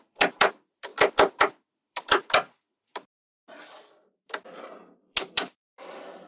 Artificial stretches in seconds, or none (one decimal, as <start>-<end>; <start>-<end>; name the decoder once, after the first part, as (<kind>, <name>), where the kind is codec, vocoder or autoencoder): 0.0-0.9 (vocoder, BigVGAN v2); 1.4-6.3